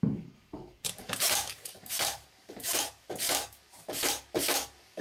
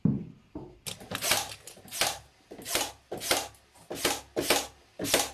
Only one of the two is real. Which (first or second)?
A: second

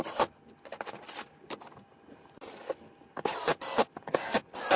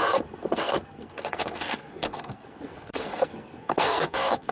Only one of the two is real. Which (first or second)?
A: first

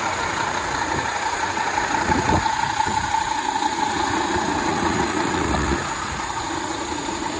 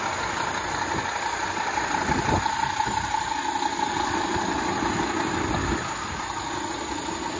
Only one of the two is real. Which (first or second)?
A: second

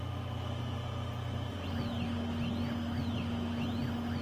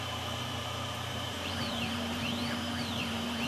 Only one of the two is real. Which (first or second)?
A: first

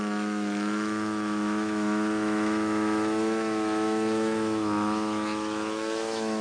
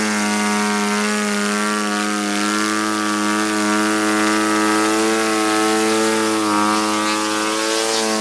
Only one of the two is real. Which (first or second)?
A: second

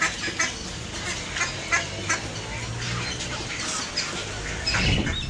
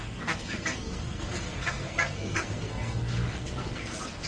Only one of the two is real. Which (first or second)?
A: first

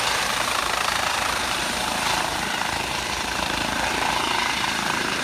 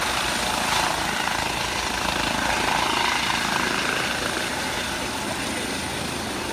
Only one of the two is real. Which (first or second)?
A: second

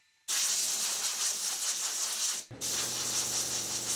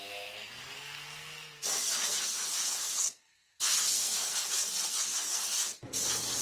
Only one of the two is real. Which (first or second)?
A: first